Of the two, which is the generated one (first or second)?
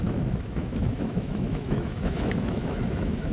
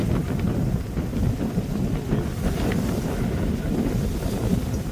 first